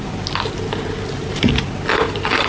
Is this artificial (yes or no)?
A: no